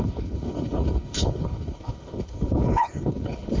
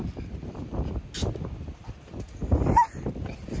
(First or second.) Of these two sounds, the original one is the second